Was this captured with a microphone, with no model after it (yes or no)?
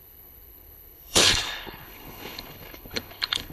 no